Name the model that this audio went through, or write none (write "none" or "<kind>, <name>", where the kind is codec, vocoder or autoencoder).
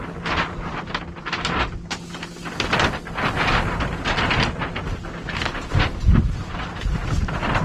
none